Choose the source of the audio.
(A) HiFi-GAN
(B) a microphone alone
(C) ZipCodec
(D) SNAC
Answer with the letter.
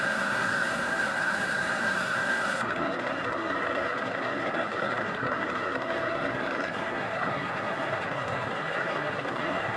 D